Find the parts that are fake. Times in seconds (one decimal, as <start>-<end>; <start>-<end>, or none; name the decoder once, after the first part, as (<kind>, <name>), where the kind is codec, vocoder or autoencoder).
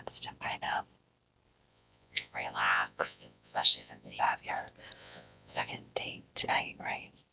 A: 1.7-4.2 (vocoder, Vocos); 5.0-5.7